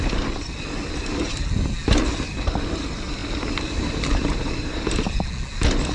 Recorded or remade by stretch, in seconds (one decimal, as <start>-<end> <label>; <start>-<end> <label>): 0.0-5.9 recorded